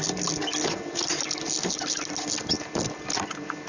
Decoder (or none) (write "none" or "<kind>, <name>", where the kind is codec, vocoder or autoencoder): none